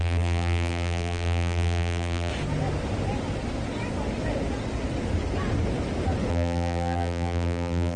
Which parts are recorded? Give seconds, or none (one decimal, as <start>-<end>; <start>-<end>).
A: 2.3-6.3

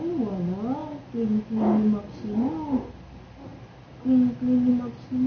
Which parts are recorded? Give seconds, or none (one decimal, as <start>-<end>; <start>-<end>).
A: 0.0-5.3

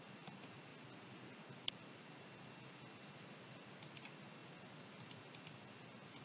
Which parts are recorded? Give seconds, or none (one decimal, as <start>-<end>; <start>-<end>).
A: 0.0-6.2

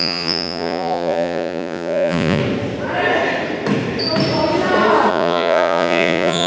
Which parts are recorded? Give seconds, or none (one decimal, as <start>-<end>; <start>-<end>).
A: 2.4-5.1

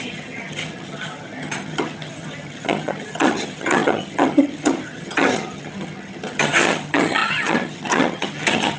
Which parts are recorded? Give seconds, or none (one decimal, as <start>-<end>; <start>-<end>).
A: none